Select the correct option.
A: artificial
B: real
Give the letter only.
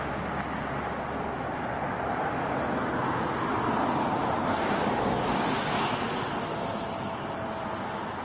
B